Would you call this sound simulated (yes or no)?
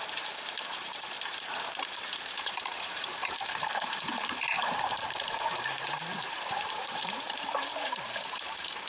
yes